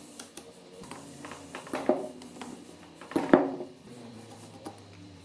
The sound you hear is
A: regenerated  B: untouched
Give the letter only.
A